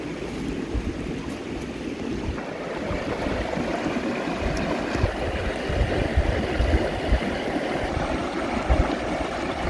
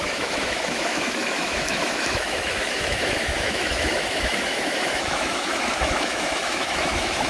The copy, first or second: second